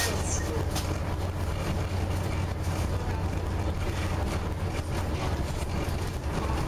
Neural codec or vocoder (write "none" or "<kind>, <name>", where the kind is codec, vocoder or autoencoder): none